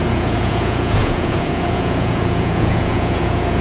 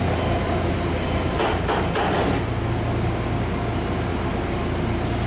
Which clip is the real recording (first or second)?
second